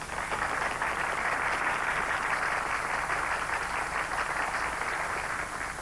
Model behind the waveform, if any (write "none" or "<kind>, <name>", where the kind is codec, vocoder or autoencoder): none